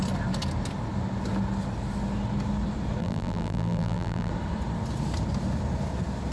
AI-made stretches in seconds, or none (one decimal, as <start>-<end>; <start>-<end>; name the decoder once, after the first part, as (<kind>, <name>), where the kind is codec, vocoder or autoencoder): 3.0-4.3 (vocoder, BigVGAN v2)